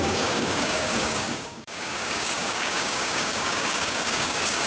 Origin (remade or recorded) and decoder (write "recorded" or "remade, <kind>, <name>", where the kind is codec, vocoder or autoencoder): remade, codec, DAC